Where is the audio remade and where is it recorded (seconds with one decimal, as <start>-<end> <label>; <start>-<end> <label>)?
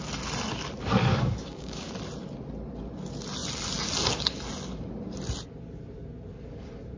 0.0-1.1 recorded; 1.1-1.9 remade; 1.9-7.0 recorded